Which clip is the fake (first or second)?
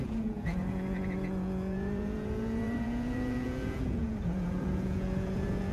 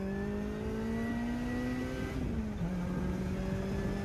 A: first